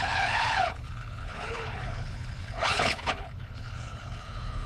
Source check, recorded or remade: remade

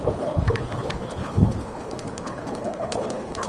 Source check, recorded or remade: remade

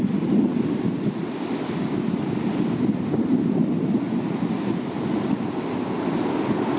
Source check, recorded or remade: recorded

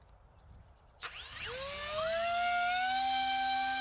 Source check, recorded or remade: recorded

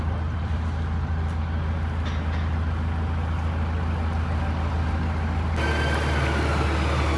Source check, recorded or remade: recorded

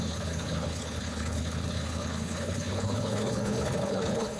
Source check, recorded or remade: remade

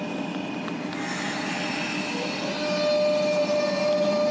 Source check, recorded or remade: recorded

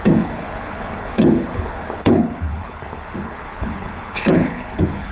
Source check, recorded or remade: remade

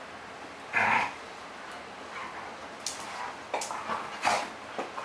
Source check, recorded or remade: recorded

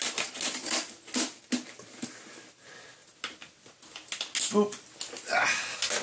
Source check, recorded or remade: recorded